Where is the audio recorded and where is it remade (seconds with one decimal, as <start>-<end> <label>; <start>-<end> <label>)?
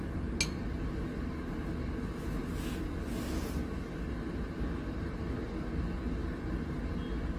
0.0-7.4 recorded